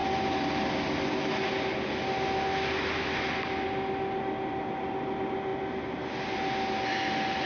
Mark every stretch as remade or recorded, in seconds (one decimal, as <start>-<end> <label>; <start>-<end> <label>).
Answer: 0.0-7.5 recorded

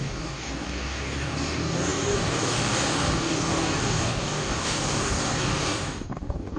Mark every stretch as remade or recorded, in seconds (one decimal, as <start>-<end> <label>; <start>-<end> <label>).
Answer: 0.0-6.6 remade

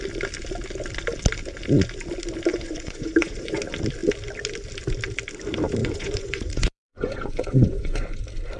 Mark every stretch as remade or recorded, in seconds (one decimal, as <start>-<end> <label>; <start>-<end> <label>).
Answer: 0.0-2.5 recorded; 2.5-3.6 remade; 3.6-5.8 recorded; 5.8-8.2 remade; 8.2-8.6 recorded

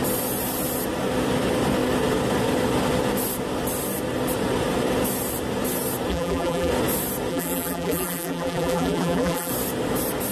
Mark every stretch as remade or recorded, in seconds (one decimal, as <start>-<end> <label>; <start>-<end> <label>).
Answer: 0.0-6.1 recorded; 6.1-6.7 remade; 6.7-7.3 recorded; 7.3-9.5 remade; 9.5-10.3 recorded

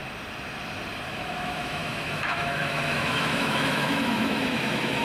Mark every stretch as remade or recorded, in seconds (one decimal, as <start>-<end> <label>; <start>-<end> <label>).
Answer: 0.0-1.1 recorded; 1.1-5.0 remade

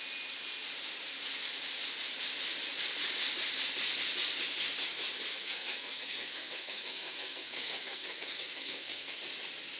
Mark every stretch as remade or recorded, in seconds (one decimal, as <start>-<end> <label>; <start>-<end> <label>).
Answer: 0.0-5.3 recorded; 5.3-9.2 remade; 9.2-9.8 recorded